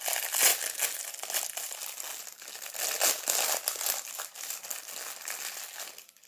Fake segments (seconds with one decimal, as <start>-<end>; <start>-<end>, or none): none